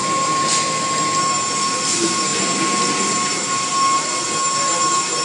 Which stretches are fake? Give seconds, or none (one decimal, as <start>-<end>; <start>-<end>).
0.0-0.7